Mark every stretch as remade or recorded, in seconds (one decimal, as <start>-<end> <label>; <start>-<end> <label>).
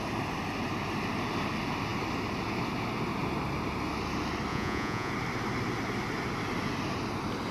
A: 0.0-4.5 recorded; 4.5-5.1 remade; 5.1-7.5 recorded